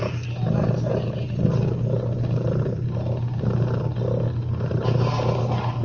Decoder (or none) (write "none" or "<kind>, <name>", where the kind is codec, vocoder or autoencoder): none